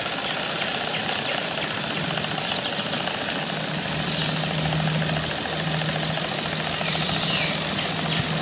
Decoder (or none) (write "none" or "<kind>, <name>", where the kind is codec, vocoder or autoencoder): none